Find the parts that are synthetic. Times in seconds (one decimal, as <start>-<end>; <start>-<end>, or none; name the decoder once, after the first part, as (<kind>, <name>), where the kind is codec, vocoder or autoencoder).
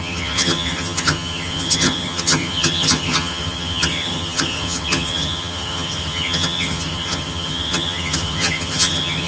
0.0-9.3 (vocoder, HiFi-GAN)